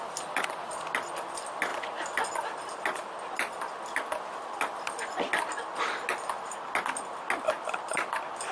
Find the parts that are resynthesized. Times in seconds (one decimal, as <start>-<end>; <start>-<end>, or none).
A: none